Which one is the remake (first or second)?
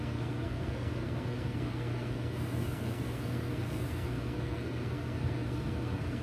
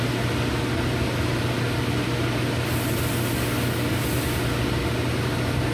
first